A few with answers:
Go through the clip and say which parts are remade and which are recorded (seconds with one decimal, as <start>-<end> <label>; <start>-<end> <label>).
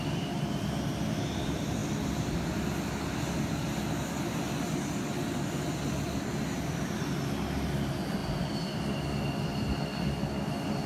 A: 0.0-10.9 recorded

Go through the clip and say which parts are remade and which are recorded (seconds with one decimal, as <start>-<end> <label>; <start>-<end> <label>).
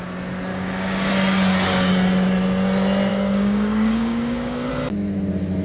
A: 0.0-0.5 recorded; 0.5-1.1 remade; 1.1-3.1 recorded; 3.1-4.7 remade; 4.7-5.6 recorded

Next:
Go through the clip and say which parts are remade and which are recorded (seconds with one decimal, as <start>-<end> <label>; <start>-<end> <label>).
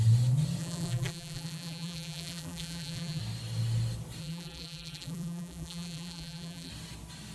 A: 0.0-0.6 recorded; 0.6-3.2 remade; 3.2-4.2 recorded; 4.2-6.7 remade; 6.7-7.3 recorded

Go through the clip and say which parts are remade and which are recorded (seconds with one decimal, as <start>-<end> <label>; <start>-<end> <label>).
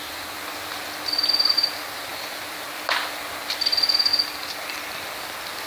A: 0.0-5.7 recorded